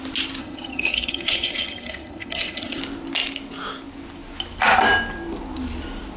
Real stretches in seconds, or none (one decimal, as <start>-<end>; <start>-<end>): 0.0-0.4; 2.8-6.2